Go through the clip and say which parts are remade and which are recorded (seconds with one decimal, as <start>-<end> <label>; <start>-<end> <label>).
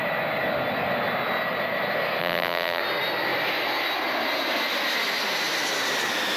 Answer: 0.0-2.2 recorded; 2.2-2.8 remade; 2.8-6.4 recorded